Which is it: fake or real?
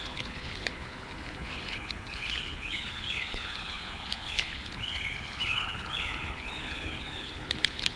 fake